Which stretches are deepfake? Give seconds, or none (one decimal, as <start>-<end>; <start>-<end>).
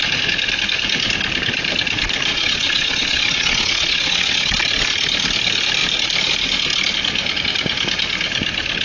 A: 2.3-4.5